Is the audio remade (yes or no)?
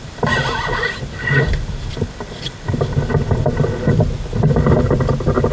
no